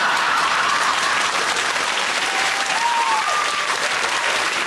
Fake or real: fake